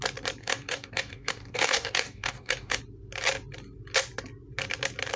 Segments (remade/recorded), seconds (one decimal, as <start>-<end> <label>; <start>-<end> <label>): 0.0-0.4 recorded; 0.4-2.8 remade; 2.8-5.2 recorded